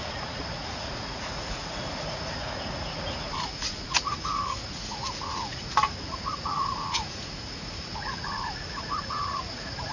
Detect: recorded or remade remade